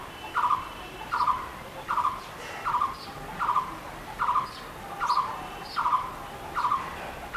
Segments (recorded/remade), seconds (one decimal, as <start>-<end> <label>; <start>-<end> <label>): 0.0-7.4 recorded